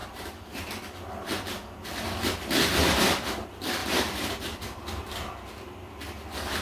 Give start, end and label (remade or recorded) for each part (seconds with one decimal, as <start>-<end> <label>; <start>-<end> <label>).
0.0-3.8 recorded; 3.8-5.3 remade; 5.3-6.6 recorded